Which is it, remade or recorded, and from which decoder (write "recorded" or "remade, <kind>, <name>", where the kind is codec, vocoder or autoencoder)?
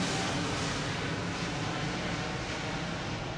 recorded